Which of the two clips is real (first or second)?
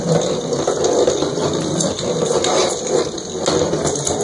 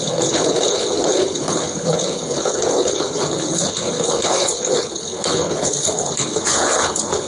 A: first